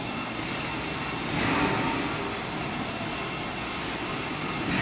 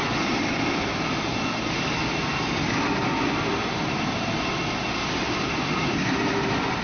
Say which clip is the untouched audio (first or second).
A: first